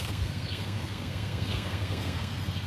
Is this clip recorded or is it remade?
remade